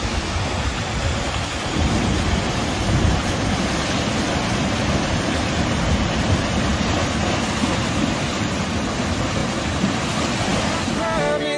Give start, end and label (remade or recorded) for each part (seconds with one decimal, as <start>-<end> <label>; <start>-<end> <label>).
0.0-11.6 recorded